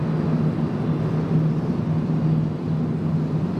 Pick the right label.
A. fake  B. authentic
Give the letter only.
B